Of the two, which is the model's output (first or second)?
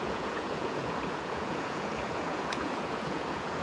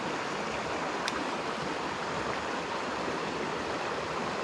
first